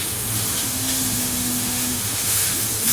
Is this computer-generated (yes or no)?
yes